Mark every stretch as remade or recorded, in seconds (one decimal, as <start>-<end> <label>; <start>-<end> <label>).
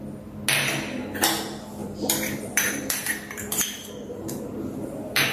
0.0-1.8 recorded; 1.8-5.3 remade